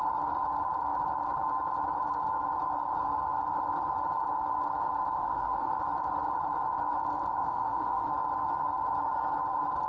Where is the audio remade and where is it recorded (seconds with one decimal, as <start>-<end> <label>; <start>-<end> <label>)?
0.0-5.2 recorded; 5.2-5.8 remade; 5.8-7.4 recorded; 7.4-8.1 remade; 8.1-9.9 recorded